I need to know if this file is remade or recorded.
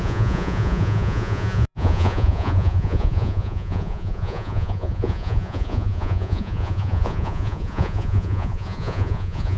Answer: remade